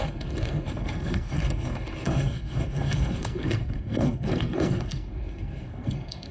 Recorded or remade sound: remade